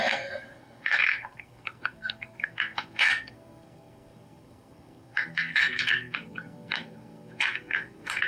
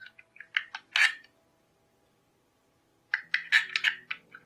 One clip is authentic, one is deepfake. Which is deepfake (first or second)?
first